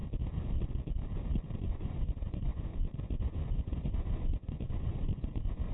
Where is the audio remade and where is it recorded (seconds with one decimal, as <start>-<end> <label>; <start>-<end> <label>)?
0.0-1.7 recorded; 1.7-5.7 remade